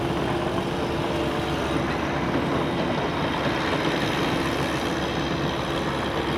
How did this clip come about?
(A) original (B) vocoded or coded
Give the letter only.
A